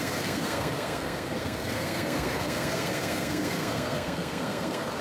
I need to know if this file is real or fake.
fake